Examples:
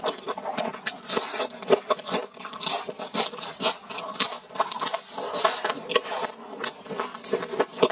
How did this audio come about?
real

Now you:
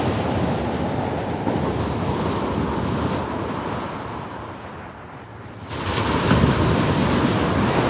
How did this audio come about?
real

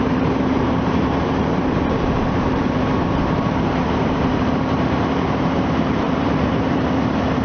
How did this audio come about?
fake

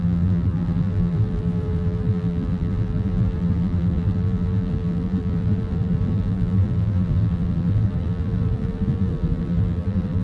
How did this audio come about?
fake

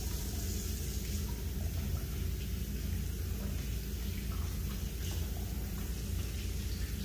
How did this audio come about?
real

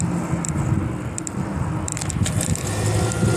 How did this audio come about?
real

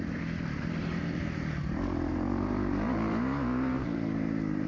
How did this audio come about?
fake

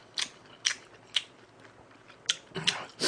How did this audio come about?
real